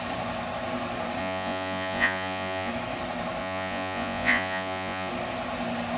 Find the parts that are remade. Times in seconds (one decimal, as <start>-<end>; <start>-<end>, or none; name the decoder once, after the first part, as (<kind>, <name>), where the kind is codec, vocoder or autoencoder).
1.2-2.7 (vocoder, Vocos); 3.4-5.1